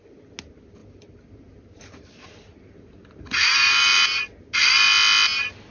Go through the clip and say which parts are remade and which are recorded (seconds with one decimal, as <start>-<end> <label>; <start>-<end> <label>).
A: 0.0-0.8 recorded; 0.8-4.2 remade; 4.2-5.7 recorded